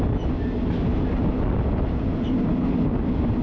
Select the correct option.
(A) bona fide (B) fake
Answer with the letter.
A